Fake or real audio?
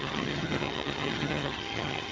fake